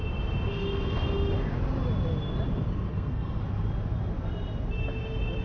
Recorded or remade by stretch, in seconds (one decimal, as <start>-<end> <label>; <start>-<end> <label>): 0.0-2.9 recorded; 2.9-3.4 remade; 3.4-5.4 recorded